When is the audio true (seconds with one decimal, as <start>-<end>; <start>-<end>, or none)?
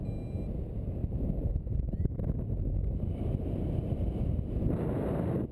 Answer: 0.0-5.5